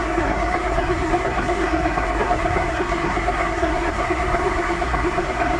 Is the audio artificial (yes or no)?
yes